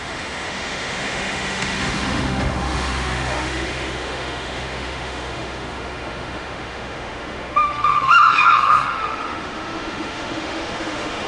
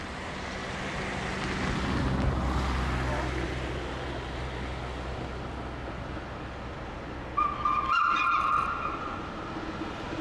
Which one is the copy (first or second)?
first